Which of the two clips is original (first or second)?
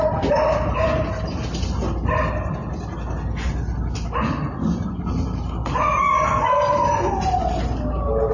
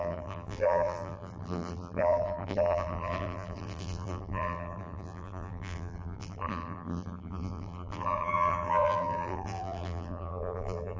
first